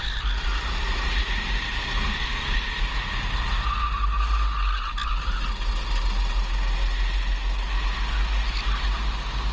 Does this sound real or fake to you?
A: real